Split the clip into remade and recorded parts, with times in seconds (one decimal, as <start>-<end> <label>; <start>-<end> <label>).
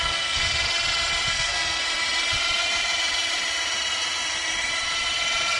0.0-0.4 remade; 0.4-1.3 recorded; 1.3-1.8 remade; 1.8-5.6 recorded